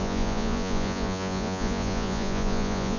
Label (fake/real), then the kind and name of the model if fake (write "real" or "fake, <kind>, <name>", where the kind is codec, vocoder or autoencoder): fake, vocoder, Vocos